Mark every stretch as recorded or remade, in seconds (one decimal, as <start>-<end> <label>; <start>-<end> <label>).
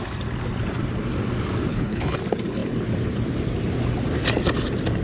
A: 0.0-1.7 recorded; 1.7-2.2 remade; 2.2-5.0 recorded